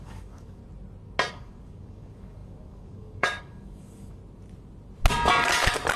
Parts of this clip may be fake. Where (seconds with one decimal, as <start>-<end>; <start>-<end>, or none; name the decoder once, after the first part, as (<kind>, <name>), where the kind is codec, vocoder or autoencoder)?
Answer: 0.0-0.6 (codec, DAC); 1.3-4.2